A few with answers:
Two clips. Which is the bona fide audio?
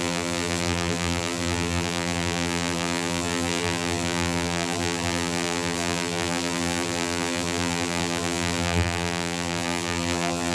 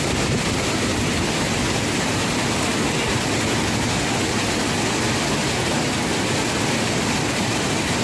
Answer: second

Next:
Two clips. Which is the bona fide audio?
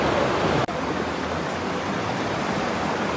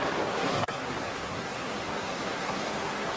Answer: first